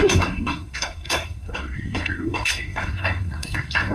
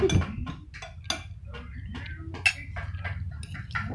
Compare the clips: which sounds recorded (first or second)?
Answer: second